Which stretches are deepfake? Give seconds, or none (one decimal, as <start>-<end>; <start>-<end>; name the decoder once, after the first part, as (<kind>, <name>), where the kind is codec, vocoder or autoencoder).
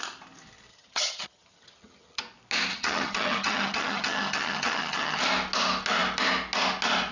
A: 0.7-2.2 (vocoder, HiFi-GAN); 2.7-5.2